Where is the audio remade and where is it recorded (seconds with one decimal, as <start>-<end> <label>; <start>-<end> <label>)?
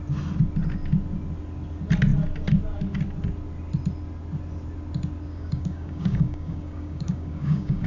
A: 0.0-5.3 recorded; 5.3-7.9 remade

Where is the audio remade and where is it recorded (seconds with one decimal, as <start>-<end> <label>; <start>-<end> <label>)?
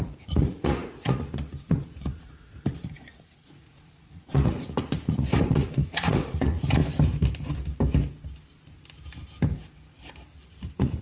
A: 0.0-6.8 remade; 6.8-10.5 recorded; 10.5-11.0 remade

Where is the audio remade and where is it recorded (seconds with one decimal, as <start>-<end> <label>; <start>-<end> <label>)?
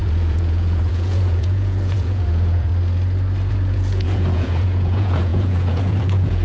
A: 0.0-2.7 remade; 2.7-3.5 recorded; 3.5-6.4 remade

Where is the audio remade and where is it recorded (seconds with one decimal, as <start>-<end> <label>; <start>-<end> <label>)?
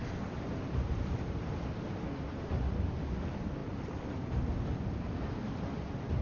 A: 0.0-6.2 recorded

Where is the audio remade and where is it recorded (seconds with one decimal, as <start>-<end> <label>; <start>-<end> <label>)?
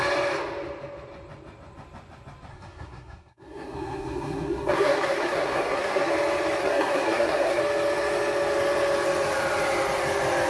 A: 0.0-2.5 recorded; 2.5-6.1 remade; 6.1-6.6 recorded; 6.6-7.6 remade; 7.6-10.5 recorded